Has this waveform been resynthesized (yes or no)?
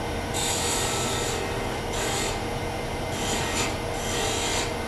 no